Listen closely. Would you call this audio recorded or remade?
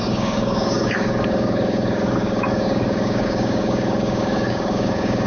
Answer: remade